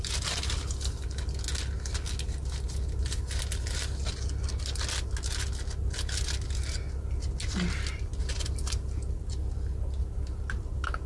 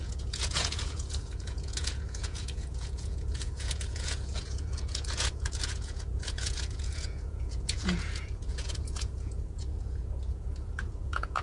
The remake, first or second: second